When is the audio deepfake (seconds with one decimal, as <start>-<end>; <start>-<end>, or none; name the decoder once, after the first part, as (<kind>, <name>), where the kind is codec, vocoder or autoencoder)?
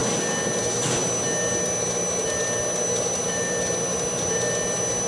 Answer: none